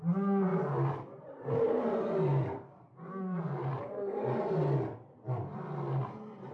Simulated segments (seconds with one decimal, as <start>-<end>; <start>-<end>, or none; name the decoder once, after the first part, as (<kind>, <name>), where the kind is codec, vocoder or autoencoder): none